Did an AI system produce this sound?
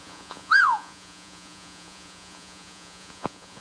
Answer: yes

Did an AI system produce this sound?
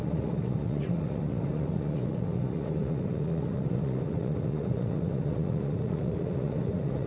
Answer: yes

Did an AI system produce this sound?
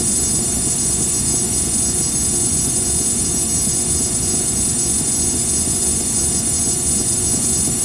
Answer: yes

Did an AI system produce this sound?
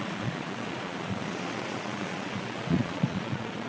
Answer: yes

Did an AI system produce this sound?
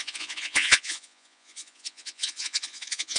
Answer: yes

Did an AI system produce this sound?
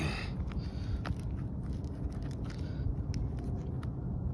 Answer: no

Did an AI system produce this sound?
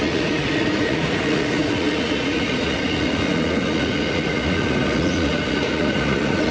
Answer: yes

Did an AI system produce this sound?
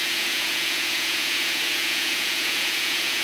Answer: yes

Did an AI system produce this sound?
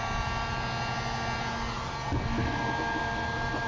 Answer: no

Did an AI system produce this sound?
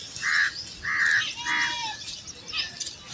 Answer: no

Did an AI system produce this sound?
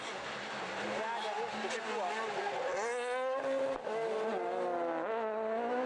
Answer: no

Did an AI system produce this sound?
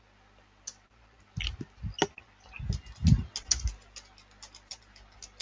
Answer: no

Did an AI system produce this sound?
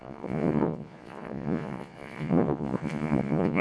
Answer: yes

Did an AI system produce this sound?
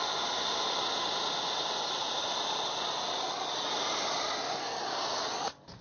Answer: no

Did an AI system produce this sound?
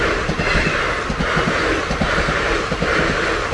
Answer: no